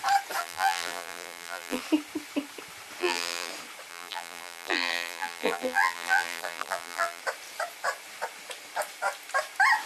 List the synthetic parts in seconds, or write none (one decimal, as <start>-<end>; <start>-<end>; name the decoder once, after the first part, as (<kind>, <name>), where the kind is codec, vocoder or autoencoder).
0.4-1.8 (vocoder, BigVGAN v2); 3.0-3.5; 3.9-7.2